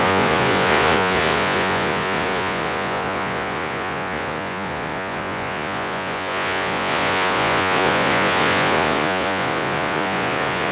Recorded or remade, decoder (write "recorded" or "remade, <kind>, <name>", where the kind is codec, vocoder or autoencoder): remade, vocoder, Vocos